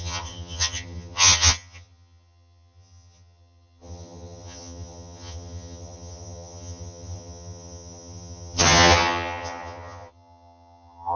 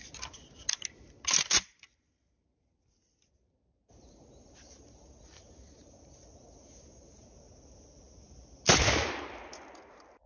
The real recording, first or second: second